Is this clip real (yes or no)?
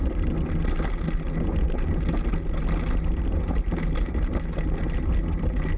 yes